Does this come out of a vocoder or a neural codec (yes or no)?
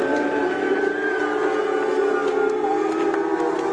no